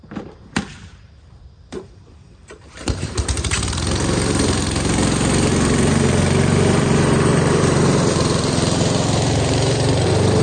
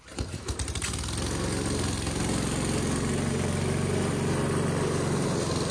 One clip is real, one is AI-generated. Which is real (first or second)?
second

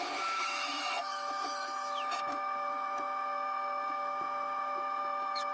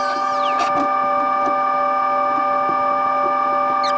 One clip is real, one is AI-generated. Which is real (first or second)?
second